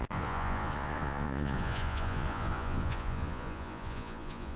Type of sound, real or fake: fake